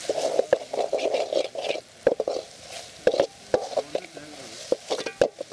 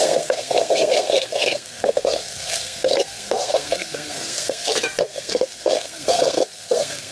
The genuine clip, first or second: first